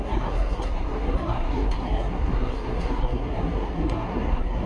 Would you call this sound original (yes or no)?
no